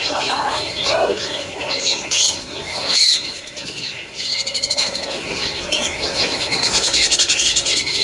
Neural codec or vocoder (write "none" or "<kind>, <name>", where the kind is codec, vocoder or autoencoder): codec, SNAC